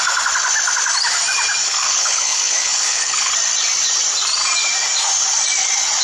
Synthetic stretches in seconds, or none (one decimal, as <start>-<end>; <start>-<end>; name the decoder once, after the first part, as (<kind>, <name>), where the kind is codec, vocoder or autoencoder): 1.6-3.3 (codec, HILCodec)